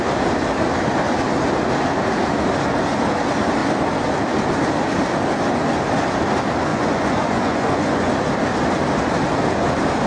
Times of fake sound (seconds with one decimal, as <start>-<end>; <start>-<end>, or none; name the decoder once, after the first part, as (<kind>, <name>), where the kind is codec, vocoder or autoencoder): 6.7-8.1 (vocoder, Vocos)